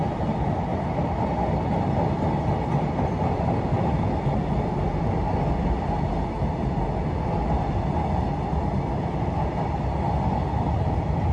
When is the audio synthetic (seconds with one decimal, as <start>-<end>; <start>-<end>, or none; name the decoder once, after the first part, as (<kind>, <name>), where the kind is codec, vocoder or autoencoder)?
none